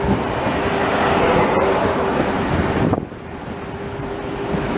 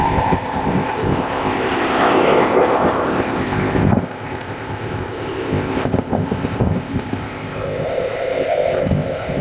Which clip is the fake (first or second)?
second